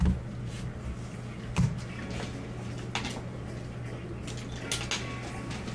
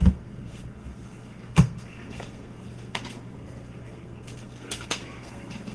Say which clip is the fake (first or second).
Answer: second